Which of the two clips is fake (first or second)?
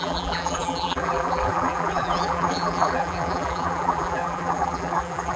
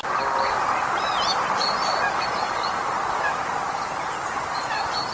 first